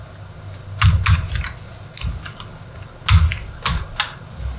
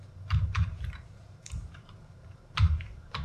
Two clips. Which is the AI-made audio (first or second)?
second